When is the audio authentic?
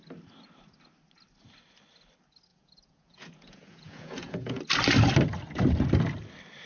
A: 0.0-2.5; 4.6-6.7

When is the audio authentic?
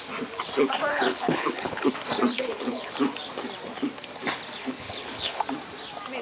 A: 0.0-0.9; 1.9-2.3; 2.9-4.8; 5.4-6.2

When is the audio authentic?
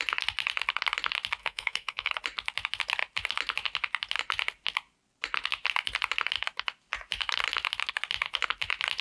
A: 0.0-1.4; 2.1-9.0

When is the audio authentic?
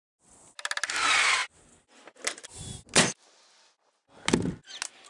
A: 0.0-5.1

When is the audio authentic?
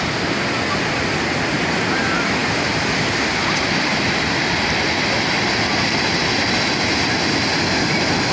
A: 0.0-8.3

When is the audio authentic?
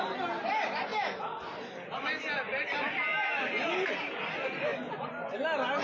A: 0.0-5.8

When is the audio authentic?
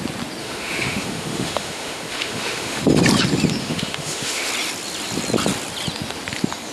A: 0.0-0.4; 2.8-3.6; 4.5-6.7